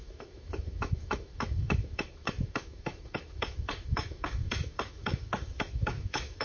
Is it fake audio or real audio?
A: fake